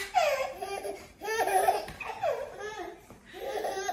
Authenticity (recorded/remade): remade